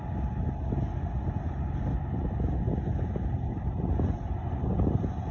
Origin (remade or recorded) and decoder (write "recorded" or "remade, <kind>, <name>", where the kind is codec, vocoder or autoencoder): recorded